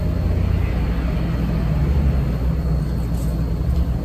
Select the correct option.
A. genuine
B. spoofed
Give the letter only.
A